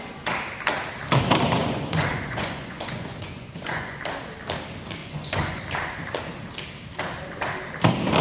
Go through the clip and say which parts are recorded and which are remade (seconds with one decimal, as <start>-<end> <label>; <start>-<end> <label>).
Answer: 0.0-1.6 recorded; 1.6-4.0 remade; 4.0-5.0 recorded; 5.0-5.6 remade; 5.6-8.2 recorded